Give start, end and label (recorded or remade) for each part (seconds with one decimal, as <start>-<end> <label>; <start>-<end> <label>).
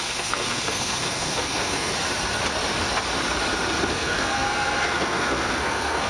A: 0.0-1.9 remade; 1.9-3.9 recorded; 3.9-6.1 remade